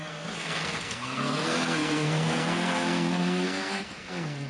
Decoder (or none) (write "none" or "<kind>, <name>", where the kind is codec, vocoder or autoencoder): codec, SNAC